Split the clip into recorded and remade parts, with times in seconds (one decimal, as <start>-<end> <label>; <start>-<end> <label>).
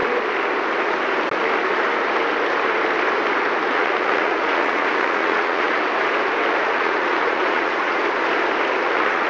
0.0-3.7 recorded; 3.7-5.8 remade; 5.8-6.5 recorded; 6.5-8.0 remade; 8.0-8.9 recorded; 8.9-9.3 remade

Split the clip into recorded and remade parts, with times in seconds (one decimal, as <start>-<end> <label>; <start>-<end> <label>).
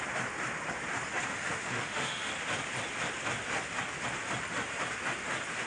0.0-1.3 recorded; 1.3-2.3 remade; 2.3-5.7 recorded